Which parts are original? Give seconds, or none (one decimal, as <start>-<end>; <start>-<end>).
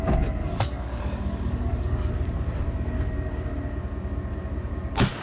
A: 0.0-0.4; 2.1-5.2